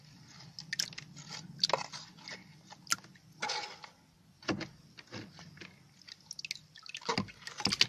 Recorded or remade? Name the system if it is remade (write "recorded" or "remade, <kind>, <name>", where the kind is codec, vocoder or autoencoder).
recorded